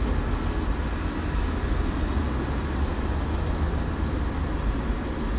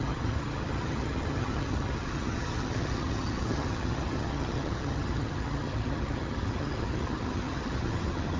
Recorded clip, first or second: first